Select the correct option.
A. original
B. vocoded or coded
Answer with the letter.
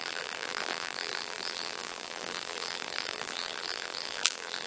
B